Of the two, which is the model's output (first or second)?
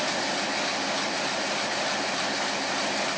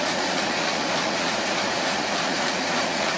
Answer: second